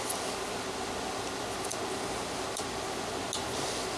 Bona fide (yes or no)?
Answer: yes